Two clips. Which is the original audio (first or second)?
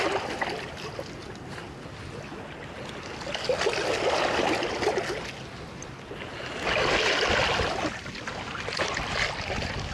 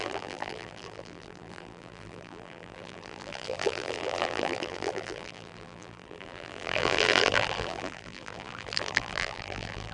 first